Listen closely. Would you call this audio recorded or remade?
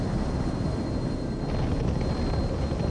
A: recorded